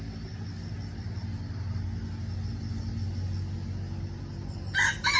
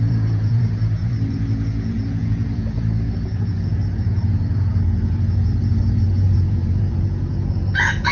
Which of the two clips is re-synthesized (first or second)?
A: second